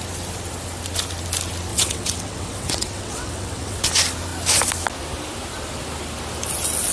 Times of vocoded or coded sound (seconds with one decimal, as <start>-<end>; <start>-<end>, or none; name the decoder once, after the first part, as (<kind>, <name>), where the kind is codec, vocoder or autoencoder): 1.7-3.8 (vocoder, WaveNeXt)